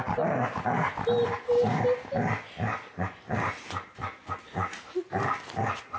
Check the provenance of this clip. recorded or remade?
recorded